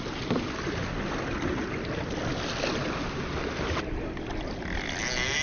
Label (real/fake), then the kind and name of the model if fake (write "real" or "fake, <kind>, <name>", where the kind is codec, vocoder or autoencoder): real